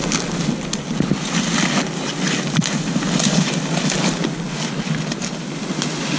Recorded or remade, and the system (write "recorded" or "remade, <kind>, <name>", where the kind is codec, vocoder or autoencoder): recorded